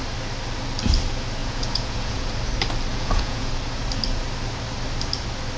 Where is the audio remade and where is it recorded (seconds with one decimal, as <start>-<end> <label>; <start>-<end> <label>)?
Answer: 0.0-1.4 recorded; 1.4-2.3 remade; 2.3-2.9 recorded; 2.9-3.5 remade; 3.5-5.6 recorded